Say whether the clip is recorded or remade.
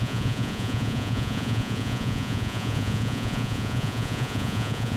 remade